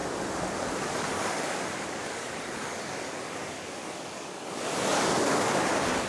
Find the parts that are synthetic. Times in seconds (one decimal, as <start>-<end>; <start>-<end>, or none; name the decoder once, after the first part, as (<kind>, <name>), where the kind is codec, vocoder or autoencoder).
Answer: 1.0-6.1 (codec, DAC)